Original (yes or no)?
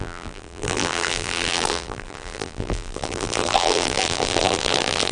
no